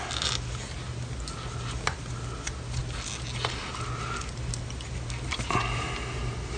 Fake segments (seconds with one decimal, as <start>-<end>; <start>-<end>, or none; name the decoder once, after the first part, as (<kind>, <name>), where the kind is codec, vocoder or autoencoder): none